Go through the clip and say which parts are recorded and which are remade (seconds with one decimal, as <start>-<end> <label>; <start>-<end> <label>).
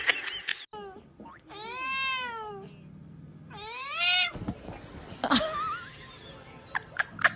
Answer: 0.0-7.4 recorded